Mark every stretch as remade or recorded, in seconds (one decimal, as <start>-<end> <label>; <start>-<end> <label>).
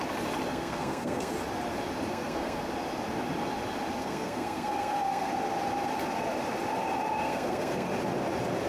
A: 0.0-0.5 recorded; 0.5-1.3 remade; 1.3-2.1 recorded; 2.1-2.7 remade; 2.7-4.0 recorded; 4.0-5.3 remade; 5.3-7.2 recorded; 7.2-7.9 remade; 7.9-8.7 recorded